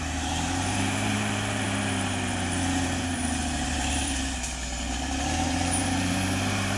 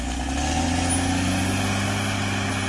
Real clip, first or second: second